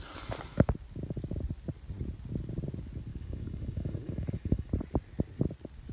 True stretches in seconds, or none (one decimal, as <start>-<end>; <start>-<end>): 0.0-3.1; 4.7-5.9